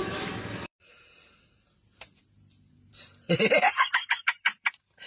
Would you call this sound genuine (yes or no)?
no